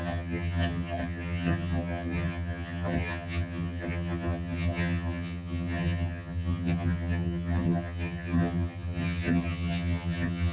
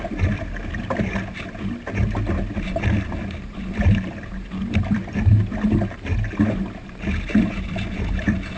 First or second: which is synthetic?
first